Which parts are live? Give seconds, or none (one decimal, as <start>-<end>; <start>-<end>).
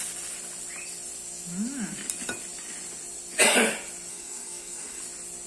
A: 0.0-4.1; 5.0-5.5